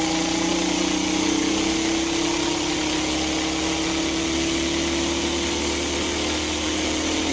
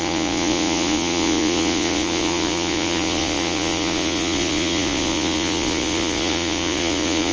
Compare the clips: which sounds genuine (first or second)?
first